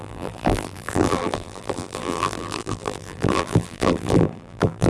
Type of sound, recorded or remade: remade